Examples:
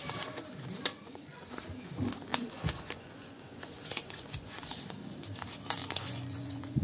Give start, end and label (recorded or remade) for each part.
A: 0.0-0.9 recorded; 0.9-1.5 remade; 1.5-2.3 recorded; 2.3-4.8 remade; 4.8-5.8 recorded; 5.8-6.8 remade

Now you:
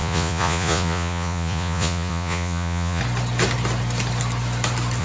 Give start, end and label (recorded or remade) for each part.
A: 0.0-3.0 remade; 3.0-5.0 recorded

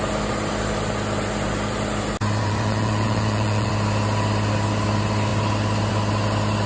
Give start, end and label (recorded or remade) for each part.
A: 0.0-2.4 recorded; 2.4-3.7 remade; 3.7-6.7 recorded

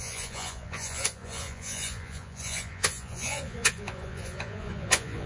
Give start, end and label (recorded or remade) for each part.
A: 0.0-5.3 remade